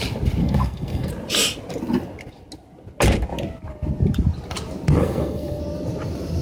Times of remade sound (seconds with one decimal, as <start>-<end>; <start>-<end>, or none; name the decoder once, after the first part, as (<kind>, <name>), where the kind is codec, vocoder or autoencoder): 0.4-1.1 (codec, SNAC); 5.0-5.6